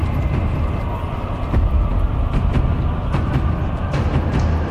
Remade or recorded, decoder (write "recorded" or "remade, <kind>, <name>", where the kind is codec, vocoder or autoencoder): recorded